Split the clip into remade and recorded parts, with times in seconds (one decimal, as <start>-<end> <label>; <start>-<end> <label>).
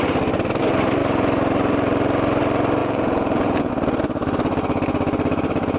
0.0-2.8 recorded; 2.8-3.7 remade; 3.7-5.8 recorded